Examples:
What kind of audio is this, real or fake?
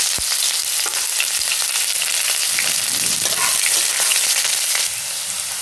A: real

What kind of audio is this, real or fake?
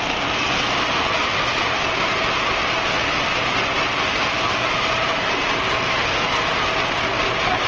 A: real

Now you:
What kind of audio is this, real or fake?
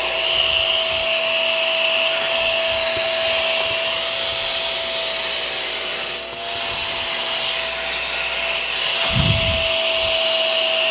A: real